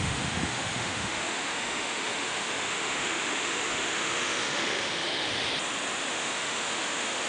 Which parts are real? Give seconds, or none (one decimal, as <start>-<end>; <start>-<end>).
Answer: 5.3-6.1